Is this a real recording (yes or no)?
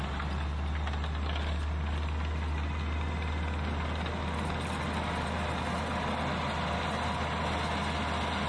yes